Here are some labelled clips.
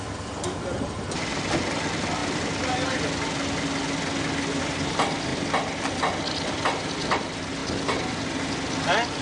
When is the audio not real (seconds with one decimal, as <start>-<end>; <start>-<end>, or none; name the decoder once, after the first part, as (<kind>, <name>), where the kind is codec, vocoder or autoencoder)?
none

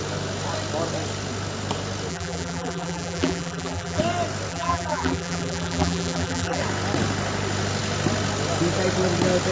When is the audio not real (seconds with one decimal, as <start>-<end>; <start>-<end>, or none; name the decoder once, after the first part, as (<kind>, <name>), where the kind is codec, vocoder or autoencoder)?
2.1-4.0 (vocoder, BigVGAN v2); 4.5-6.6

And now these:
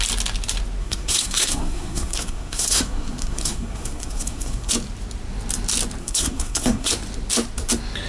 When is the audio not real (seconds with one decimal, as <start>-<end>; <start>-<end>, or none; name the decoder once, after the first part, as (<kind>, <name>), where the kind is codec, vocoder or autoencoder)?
0.8-4.7 (codec, SNAC); 6.0-6.9